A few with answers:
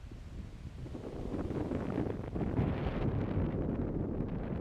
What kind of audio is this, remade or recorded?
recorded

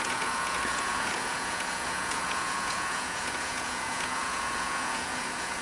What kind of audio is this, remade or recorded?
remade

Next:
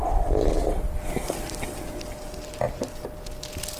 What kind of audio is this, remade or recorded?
recorded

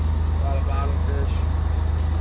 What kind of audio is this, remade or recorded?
recorded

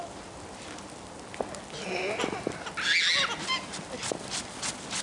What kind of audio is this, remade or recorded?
recorded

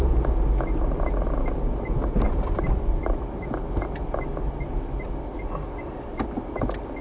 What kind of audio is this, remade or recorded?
recorded